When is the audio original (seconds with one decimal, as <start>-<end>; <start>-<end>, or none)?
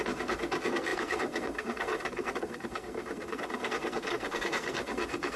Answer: none